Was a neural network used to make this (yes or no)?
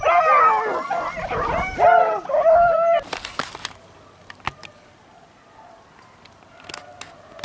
no